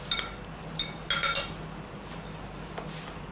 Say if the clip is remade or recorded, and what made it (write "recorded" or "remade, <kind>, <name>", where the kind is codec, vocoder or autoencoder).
recorded